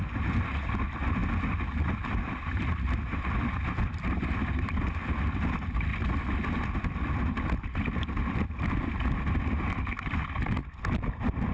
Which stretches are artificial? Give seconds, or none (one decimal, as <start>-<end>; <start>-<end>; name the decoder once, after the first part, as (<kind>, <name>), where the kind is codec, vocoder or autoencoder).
1.2-5.5 (vocoder, BigVGAN v2); 5.9-7.2